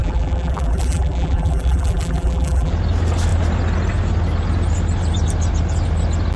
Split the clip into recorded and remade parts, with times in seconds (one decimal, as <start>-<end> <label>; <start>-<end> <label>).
0.0-2.7 remade; 2.7-6.4 recorded